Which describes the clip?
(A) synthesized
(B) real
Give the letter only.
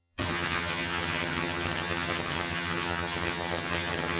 A